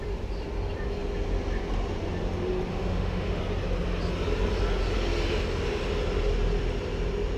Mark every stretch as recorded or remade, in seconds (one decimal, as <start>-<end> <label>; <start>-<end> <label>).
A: 0.0-2.7 recorded; 2.7-3.4 remade; 3.4-7.4 recorded